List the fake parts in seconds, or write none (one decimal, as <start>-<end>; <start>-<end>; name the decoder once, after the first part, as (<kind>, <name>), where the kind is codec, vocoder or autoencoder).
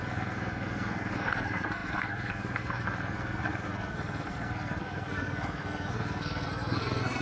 0.0-7.2 (codec, SNAC)